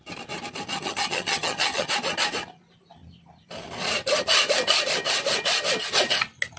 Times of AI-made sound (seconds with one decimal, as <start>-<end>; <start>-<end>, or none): 0.7-1.9